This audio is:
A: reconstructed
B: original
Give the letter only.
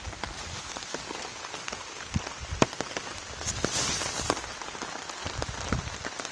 B